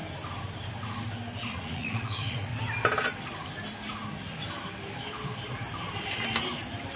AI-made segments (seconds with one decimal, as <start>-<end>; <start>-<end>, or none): 1.5-2.5